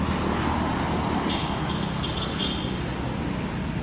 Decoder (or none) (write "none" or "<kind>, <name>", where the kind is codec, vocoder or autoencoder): none